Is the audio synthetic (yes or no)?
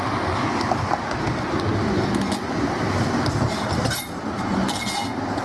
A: no